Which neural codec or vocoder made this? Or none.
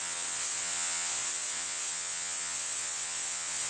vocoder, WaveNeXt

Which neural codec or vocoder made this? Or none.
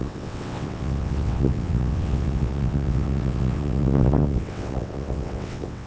vocoder, WaveNeXt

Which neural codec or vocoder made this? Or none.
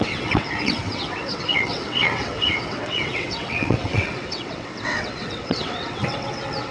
vocoder, WaveNeXt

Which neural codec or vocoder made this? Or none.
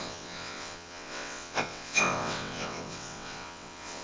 vocoder, WaveNeXt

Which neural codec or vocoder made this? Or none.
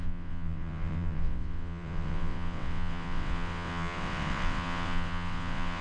vocoder, WaveNeXt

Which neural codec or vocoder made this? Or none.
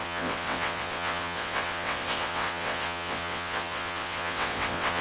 vocoder, WaveNeXt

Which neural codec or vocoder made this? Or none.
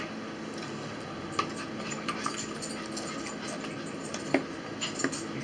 none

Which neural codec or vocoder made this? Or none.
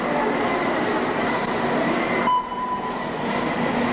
none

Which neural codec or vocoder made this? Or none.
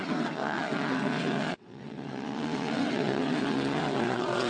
vocoder, WaveNeXt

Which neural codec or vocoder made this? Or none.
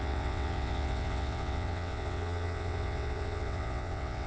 vocoder, WaveNeXt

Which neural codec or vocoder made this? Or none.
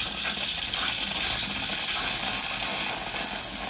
none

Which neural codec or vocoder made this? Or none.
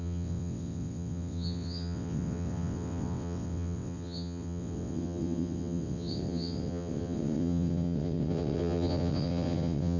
vocoder, WaveNeXt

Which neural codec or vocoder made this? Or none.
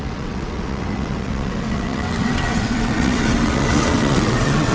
vocoder, WaveNeXt